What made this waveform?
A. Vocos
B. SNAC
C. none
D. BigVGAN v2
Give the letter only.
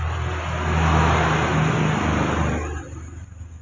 C